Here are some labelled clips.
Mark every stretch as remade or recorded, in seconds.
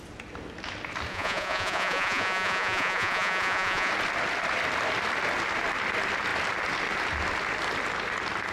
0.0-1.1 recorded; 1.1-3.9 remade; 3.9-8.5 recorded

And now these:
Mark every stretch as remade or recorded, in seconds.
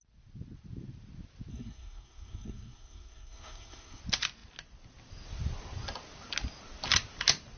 0.0-1.5 recorded; 1.5-4.0 remade; 4.0-7.6 recorded